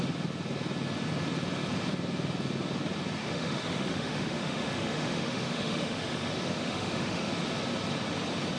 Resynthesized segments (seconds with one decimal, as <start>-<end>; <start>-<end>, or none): 3.2-7.3